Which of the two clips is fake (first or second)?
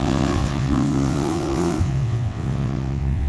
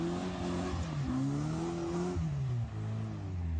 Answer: first